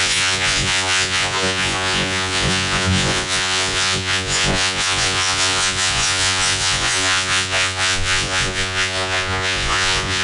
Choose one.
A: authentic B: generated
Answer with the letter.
B